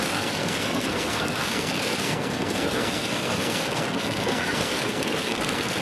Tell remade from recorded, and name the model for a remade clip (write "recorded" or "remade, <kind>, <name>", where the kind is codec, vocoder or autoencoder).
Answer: remade, codec, SNAC